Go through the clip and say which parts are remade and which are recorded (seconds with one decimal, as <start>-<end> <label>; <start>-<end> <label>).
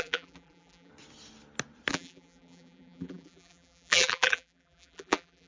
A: 0.0-0.9 remade; 0.9-1.9 recorded; 1.9-5.5 remade